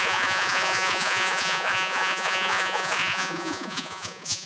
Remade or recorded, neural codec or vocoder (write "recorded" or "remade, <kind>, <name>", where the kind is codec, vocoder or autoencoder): remade, vocoder, Vocos